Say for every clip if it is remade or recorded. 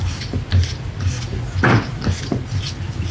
recorded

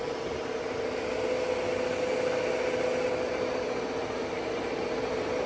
recorded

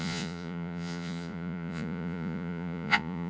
remade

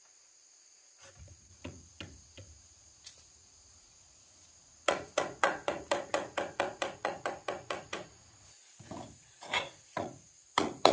remade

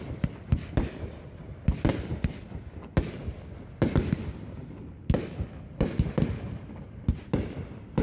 recorded